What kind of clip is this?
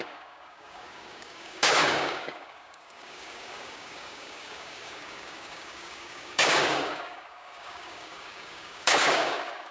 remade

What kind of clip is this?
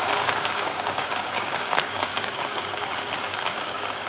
remade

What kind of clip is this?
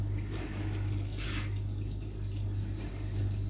remade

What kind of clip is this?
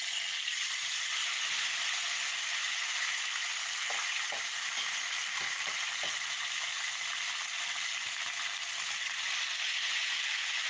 recorded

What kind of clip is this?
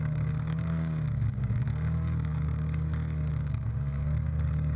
remade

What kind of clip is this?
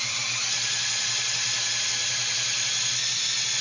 recorded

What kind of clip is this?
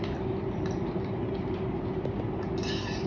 recorded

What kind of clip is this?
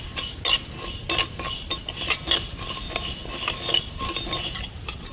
recorded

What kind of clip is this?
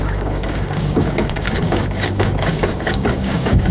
remade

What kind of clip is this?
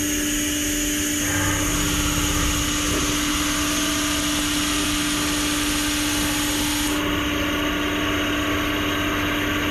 recorded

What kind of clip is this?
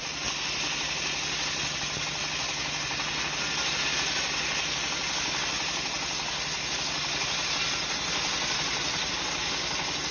recorded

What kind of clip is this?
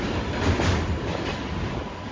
recorded